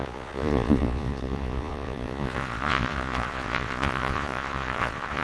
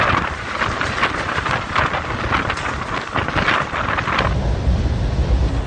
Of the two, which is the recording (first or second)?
second